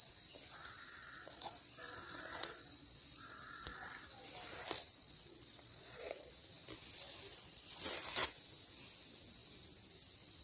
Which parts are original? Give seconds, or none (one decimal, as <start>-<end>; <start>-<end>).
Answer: 0.0-1.0; 4.0-5.0; 6.3-7.3; 7.8-10.4